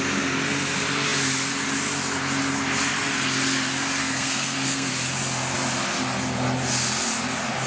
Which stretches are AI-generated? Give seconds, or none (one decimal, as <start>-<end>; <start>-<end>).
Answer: 4.0-4.9